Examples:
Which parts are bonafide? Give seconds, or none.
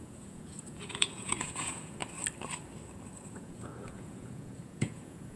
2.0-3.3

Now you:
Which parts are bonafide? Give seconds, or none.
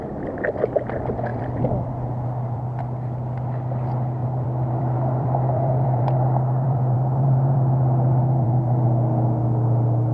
0.0-1.3; 2.8-4.2; 8.6-10.1